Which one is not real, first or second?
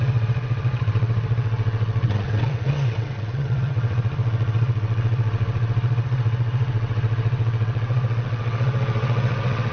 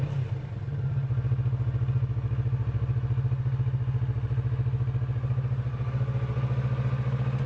first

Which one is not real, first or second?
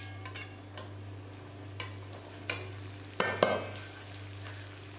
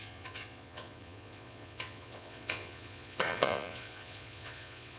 second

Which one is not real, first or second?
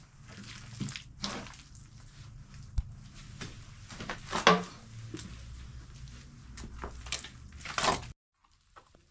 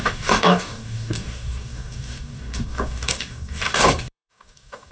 second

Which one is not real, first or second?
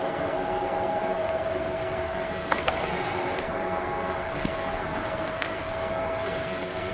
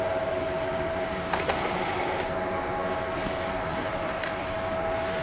first